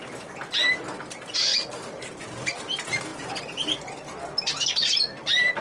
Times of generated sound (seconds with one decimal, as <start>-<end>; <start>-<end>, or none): 1.5-2.6; 3.1-4.0